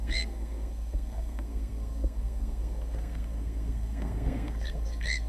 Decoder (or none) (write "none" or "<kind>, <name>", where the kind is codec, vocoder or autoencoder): codec, SNAC